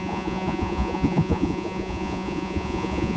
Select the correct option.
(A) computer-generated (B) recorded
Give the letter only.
A